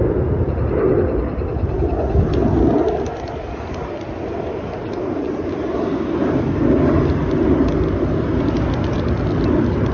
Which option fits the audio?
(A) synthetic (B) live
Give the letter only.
B